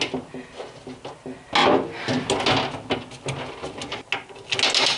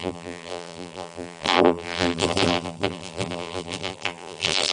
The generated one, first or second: second